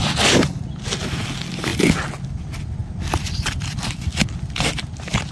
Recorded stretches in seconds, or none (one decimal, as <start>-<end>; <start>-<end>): 0.0-5.3